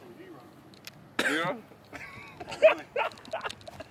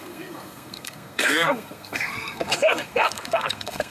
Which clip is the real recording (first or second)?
first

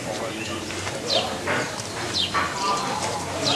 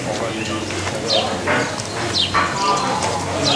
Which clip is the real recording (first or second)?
second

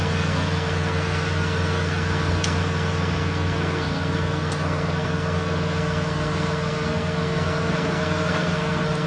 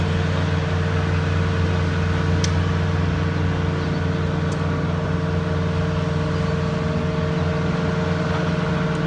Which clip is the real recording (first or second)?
second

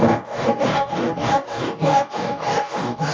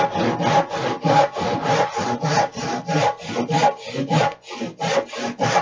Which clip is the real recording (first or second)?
second